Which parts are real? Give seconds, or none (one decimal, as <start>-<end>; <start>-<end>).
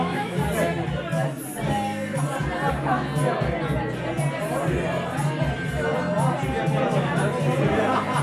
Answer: 0.4-2.7; 3.1-8.2